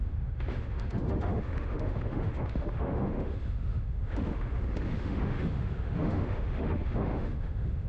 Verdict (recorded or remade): remade